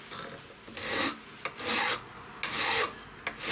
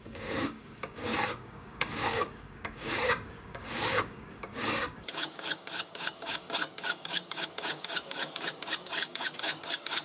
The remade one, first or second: second